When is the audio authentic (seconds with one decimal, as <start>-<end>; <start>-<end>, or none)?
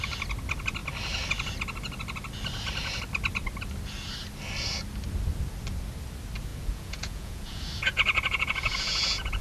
0.0-6.5